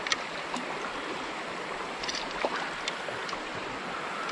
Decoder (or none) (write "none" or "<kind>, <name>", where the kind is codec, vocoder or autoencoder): none